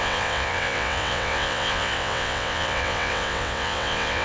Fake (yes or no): yes